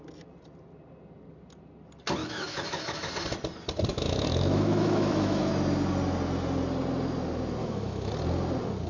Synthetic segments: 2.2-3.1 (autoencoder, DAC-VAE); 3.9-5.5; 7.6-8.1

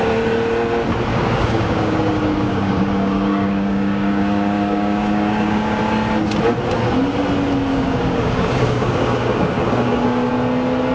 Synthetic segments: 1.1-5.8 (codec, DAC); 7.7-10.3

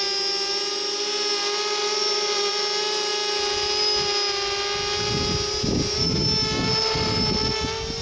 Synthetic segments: 1.8-2.5 (vocoder, BigVGAN v2)

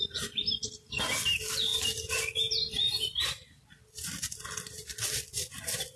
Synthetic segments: none